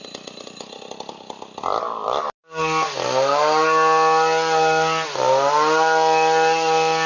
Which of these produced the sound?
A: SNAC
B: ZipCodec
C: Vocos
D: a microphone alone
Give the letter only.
D